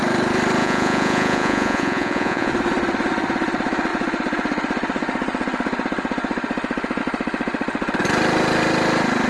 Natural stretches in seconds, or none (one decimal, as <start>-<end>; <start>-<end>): 0.0-0.6; 2.5-9.3

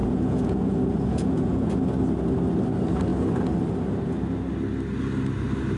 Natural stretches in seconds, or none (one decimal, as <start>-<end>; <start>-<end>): 1.7-5.8

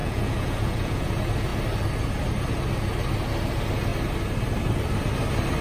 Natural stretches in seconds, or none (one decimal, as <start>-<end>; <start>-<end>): 1.1-5.6

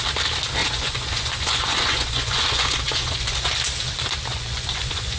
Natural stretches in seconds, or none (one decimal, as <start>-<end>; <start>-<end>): 0.0-0.6; 3.5-4.3

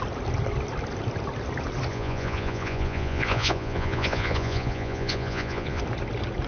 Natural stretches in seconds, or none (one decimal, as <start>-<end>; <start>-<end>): 0.0-1.9; 5.8-6.5

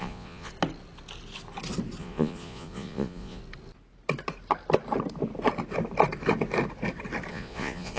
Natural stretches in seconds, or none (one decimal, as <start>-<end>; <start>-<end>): 0.5-2.0; 3.4-7.3